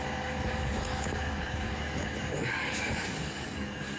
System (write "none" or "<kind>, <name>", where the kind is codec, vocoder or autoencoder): codec, DAC